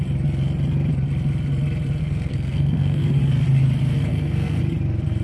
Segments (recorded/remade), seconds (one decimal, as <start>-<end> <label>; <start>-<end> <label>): 0.0-2.0 recorded; 2.0-3.2 remade; 3.2-4.1 recorded; 4.1-4.6 remade; 4.6-5.2 recorded